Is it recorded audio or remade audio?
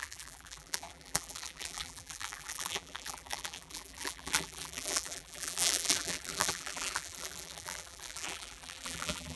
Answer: remade